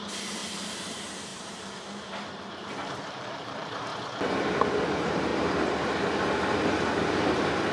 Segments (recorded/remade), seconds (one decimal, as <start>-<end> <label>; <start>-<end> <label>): 0.0-3.9 remade; 3.9-4.8 recorded; 4.8-5.3 remade; 5.3-6.7 recorded; 6.7-7.7 remade